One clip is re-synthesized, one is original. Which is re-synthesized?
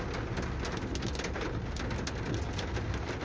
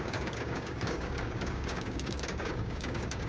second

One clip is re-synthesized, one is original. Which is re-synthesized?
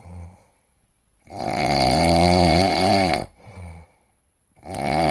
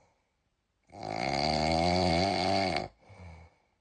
first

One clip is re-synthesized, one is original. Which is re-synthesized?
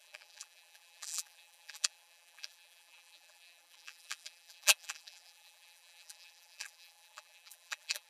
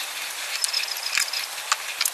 first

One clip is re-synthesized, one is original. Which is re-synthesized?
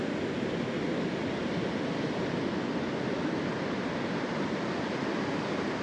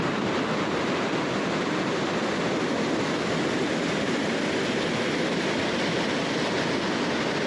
second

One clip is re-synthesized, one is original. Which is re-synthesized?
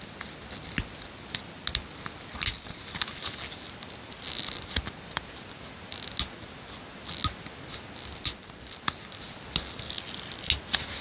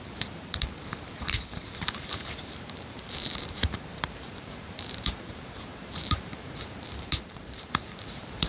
second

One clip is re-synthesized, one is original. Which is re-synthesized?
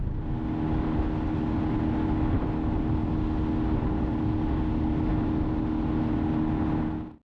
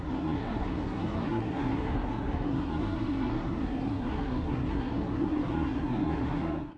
second